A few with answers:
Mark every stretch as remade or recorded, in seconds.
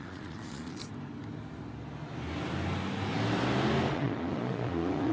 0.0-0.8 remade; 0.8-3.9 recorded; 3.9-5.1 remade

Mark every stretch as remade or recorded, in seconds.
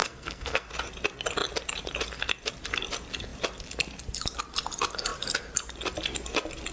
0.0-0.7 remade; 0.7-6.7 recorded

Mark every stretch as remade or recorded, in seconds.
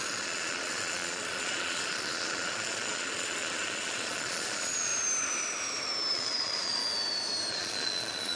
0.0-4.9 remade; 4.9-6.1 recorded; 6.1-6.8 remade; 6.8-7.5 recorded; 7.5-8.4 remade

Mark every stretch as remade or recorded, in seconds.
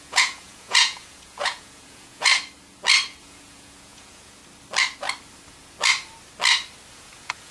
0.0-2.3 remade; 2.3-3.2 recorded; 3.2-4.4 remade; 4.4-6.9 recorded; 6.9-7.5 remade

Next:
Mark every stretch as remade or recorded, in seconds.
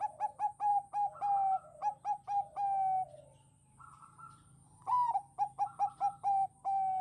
0.0-7.0 recorded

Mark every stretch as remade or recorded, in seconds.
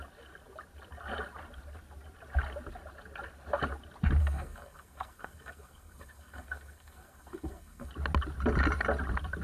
0.0-4.2 recorded; 4.2-7.9 remade; 7.9-9.4 recorded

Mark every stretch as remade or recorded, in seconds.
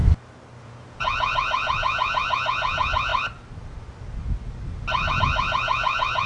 0.0-0.6 recorded; 0.6-3.1 remade; 3.1-5.1 recorded; 5.1-6.3 remade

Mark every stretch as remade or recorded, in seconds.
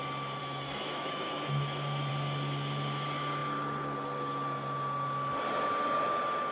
0.0-0.4 recorded; 0.4-2.1 remade; 2.1-6.5 recorded